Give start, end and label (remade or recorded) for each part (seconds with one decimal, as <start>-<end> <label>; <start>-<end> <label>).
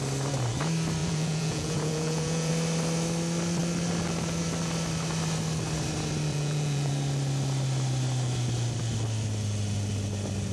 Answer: 0.0-1.0 recorded; 1.0-2.5 remade; 2.5-6.3 recorded; 6.3-6.9 remade; 6.9-10.5 recorded